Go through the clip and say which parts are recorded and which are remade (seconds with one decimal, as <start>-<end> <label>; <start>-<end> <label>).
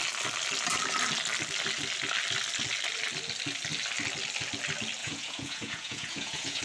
0.0-5.0 recorded; 5.0-6.6 remade